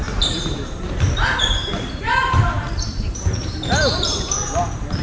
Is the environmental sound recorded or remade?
remade